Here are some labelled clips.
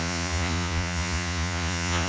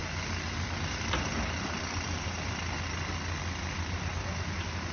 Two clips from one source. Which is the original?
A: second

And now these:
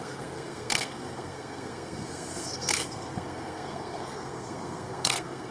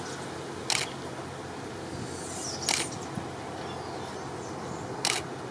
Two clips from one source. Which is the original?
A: second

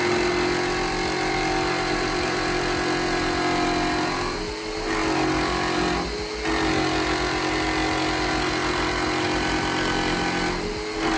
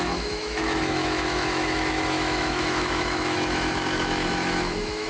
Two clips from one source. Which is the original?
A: first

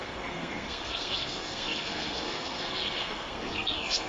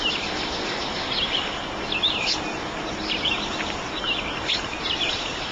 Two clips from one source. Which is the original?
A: second